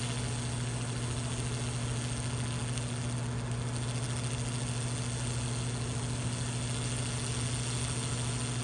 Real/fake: real